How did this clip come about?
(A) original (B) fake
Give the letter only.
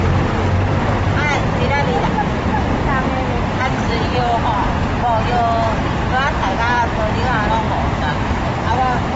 A